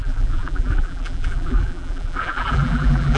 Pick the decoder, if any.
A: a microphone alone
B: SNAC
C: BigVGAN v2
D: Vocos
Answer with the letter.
C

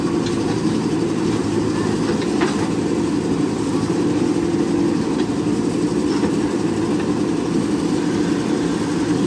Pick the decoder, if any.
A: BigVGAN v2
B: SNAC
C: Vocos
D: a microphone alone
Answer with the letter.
D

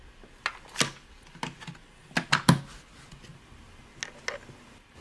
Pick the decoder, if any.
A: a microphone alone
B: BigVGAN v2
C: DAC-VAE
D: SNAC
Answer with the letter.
A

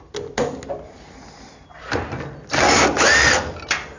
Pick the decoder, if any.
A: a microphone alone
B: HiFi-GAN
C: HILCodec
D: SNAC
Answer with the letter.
A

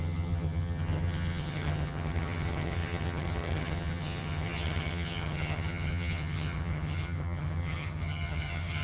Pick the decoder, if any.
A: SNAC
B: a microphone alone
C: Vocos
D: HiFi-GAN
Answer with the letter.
D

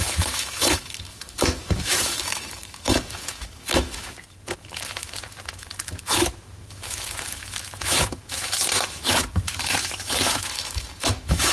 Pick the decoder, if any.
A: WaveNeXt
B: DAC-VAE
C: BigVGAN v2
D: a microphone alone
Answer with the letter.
B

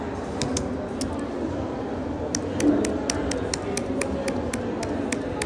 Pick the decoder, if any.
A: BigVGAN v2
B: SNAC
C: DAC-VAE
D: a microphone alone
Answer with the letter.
D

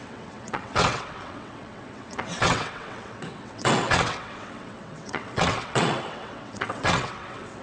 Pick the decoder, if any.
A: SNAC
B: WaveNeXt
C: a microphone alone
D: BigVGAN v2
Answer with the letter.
B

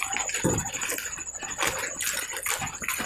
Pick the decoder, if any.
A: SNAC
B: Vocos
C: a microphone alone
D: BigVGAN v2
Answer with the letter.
C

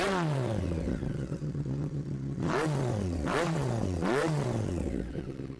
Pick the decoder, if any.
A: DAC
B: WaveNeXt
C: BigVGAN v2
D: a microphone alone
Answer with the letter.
B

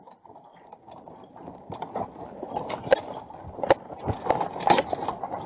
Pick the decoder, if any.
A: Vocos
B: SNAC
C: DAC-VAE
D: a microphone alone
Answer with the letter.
D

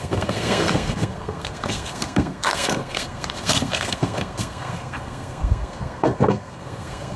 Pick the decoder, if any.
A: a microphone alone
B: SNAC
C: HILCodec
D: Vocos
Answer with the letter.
B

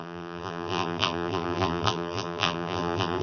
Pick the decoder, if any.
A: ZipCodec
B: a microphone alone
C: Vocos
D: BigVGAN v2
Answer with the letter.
D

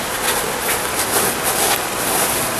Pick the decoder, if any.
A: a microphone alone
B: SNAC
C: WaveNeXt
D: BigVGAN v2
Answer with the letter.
A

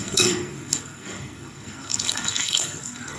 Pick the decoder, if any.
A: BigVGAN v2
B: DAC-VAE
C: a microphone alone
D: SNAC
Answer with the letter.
D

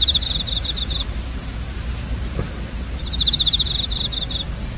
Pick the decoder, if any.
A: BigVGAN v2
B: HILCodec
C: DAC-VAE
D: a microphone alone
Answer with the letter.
A